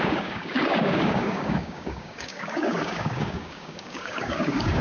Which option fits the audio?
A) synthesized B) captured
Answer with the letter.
A